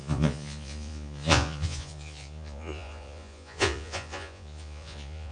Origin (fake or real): fake